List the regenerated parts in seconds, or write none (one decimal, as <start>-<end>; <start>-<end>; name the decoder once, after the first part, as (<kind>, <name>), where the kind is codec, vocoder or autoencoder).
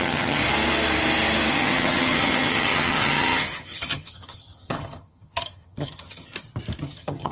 0.0-0.4 (vocoder, HiFi-GAN); 1.5-6.3; 6.8-7.3